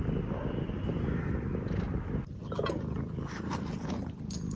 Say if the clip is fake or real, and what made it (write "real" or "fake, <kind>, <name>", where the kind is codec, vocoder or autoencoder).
real